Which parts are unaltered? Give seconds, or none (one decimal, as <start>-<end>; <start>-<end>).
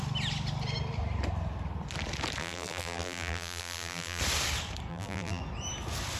0.0-2.4; 4.2-4.9; 5.4-6.2